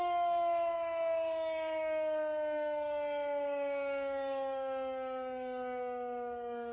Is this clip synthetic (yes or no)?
yes